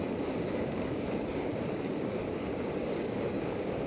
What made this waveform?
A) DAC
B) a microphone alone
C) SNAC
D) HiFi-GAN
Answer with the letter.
A